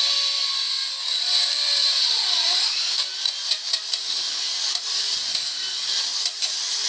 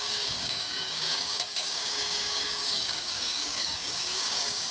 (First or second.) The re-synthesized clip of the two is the second